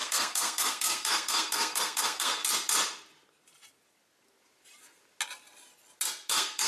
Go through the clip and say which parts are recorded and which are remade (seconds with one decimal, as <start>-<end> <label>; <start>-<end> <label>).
0.0-2.4 remade; 2.4-6.3 recorded; 6.3-6.7 remade